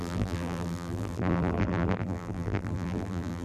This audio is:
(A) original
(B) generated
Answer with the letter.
B